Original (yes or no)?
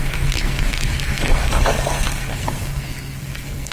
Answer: no